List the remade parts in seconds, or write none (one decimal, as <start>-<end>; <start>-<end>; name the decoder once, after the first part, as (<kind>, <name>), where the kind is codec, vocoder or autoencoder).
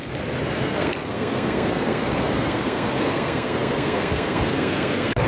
0.5-5.3 (codec, SNAC)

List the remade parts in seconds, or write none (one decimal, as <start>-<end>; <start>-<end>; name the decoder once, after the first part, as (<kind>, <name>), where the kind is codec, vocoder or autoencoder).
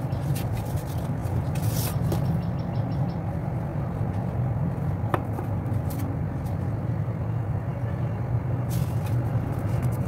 none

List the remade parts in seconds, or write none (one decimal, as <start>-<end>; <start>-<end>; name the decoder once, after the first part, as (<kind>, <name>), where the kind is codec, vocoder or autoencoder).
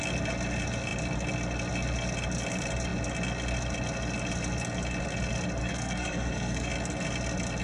5.6-6.7 (codec, SNAC)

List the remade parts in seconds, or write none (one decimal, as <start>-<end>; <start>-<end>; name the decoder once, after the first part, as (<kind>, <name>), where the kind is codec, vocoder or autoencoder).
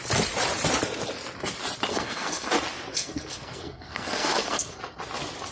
1.9-2.5 (codec, SNAC); 2.9-4.8